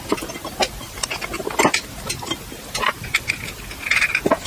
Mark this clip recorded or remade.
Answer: recorded